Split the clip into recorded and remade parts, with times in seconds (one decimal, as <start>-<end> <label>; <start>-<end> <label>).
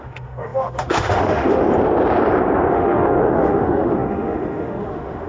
0.0-1.6 remade; 1.6-2.7 recorded; 2.7-5.3 remade